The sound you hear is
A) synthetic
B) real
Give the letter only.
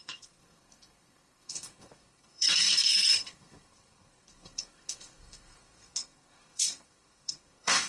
A